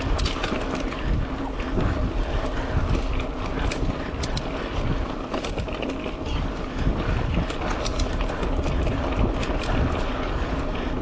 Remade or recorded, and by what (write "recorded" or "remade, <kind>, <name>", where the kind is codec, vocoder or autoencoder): recorded